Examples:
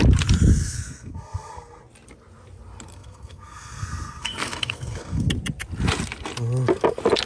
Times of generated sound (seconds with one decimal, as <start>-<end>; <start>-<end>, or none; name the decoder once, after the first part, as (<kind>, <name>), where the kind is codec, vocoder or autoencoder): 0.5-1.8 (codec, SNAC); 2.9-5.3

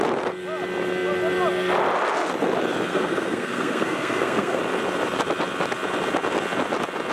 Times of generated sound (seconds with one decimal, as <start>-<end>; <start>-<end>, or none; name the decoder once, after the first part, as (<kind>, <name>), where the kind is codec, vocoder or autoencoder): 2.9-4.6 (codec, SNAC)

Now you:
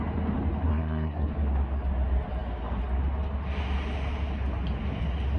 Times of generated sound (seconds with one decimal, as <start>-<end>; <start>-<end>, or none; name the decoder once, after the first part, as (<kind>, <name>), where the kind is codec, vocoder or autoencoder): 0.7-1.3 (codec, SNAC)